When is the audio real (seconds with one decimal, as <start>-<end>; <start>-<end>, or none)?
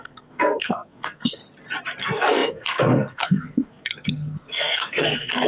1.4-2.0